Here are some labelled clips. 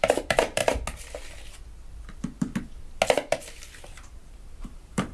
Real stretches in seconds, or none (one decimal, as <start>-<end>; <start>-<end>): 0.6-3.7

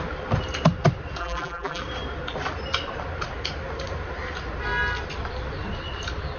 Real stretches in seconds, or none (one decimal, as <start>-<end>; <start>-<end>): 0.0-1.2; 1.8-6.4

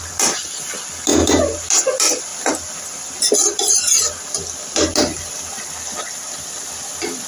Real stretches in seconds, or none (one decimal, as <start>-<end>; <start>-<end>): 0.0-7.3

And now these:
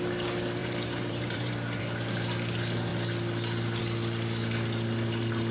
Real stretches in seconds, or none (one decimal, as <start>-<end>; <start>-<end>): 0.0-0.6; 1.8-5.5

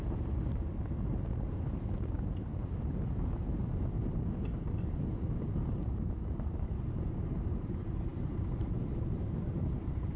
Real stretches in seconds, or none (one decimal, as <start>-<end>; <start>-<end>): 1.3-5.5